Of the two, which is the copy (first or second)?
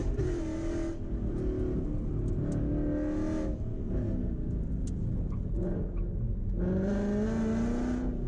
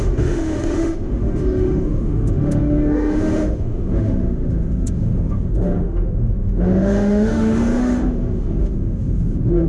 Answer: second